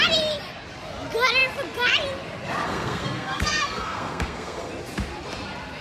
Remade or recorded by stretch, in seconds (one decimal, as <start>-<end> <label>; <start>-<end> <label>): 0.0-2.6 recorded; 2.6-4.7 remade; 4.7-5.8 recorded